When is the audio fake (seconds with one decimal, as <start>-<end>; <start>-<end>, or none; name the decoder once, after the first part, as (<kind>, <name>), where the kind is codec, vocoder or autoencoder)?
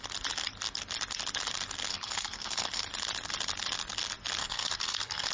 1.9-2.8 (codec, SNAC); 4.4-5.3